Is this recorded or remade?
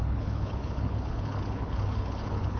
remade